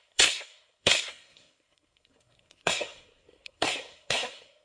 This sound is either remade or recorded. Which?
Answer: remade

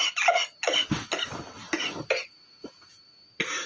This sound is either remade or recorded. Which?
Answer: recorded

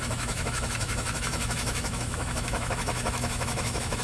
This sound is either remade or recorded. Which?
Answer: remade